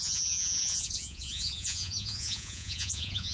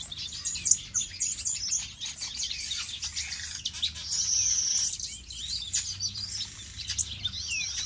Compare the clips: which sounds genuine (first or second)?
second